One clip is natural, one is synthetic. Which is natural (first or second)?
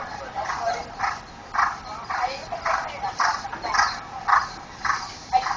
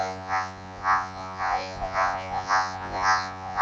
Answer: first